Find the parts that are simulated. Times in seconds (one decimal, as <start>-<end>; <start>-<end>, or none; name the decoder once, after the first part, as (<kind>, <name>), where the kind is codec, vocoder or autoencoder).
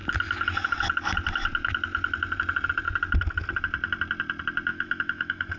4.7-5.6 (autoencoder, DAC-VAE)